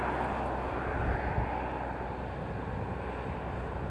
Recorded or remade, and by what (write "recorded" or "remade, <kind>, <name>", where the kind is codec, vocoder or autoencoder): recorded